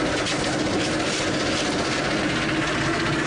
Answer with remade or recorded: recorded